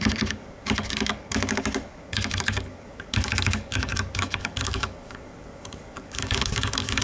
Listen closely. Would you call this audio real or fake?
fake